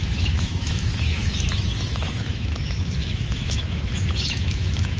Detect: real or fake fake